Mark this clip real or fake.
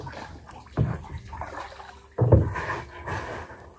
real